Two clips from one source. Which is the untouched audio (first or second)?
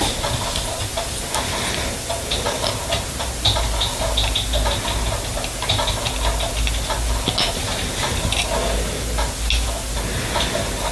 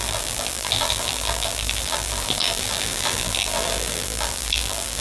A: first